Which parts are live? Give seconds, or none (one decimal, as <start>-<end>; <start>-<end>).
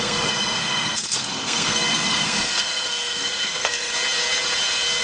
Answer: 3.9-5.0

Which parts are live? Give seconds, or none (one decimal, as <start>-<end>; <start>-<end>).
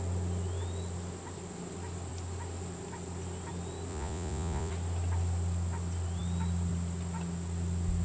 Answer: 0.0-3.9; 4.7-8.0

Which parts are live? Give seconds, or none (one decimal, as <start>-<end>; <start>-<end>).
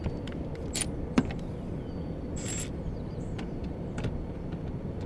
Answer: none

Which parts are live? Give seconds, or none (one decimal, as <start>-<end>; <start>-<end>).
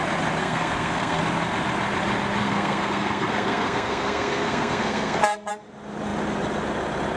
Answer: 0.0-0.4; 1.2-2.4; 5.5-7.2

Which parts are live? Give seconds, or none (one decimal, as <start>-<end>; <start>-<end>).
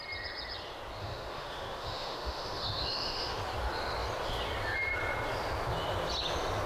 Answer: 0.0-1.0; 3.4-6.7